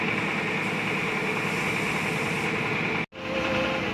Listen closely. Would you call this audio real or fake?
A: real